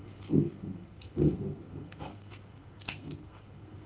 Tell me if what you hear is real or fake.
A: fake